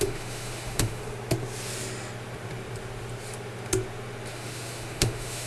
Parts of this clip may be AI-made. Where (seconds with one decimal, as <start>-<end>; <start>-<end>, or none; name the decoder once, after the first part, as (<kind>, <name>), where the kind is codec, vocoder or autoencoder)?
0.0-1.0 (autoencoder, DAC-VAE); 4.3-5.5